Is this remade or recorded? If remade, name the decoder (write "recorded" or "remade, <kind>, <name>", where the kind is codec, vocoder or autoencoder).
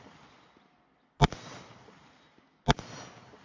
recorded